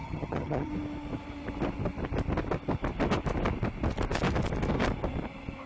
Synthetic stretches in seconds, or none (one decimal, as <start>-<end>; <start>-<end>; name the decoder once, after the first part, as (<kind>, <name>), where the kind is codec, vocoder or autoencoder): 0.0-0.7 (vocoder, HiFi-GAN)